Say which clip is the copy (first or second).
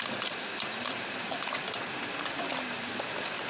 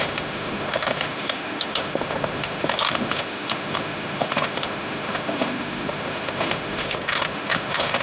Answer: second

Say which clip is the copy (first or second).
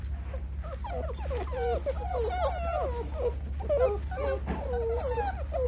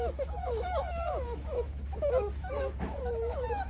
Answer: second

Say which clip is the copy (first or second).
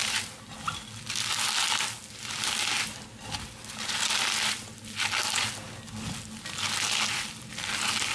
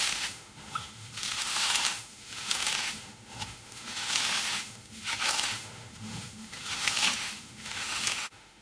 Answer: second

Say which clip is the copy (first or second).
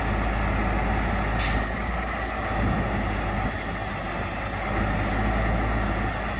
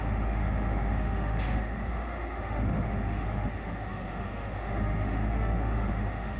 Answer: second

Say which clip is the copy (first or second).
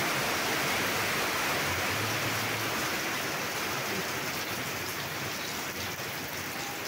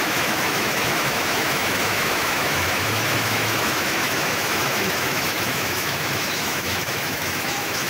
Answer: second